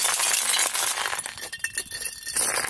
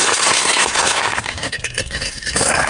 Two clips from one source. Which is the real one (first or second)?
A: first